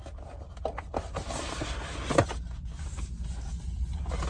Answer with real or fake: real